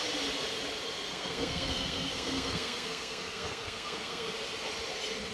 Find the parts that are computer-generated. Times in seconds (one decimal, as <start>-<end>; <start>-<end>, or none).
1.1-4.3